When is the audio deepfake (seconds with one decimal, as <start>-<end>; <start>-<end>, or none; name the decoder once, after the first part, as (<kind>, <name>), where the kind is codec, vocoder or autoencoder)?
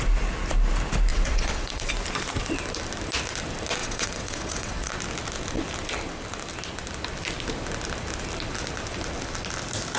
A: 1.1-1.9 (vocoder, WaveNeXt); 3.8-4.9